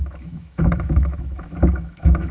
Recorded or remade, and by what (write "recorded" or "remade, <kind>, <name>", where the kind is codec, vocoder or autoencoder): remade, autoencoder, DAC-VAE